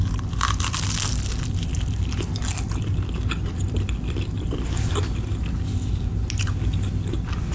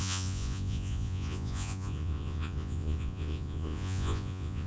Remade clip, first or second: second